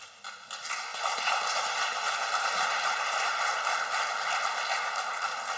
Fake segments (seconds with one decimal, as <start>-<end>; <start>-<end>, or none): 0.9-3.6